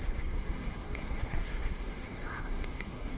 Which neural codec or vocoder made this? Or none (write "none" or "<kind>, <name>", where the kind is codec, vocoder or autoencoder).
codec, SNAC